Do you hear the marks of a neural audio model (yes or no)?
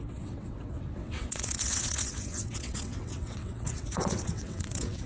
yes